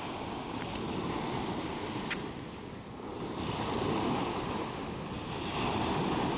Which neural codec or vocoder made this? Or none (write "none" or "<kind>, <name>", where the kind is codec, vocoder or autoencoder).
none